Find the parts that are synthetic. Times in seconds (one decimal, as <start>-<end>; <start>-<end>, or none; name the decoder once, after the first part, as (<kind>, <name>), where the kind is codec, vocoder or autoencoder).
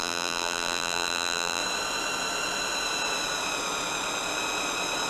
0.0-1.6 (vocoder, BigVGAN v2)